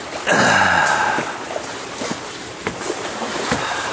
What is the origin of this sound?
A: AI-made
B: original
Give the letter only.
A